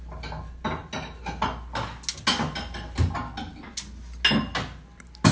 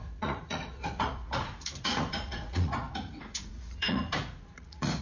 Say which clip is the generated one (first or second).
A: second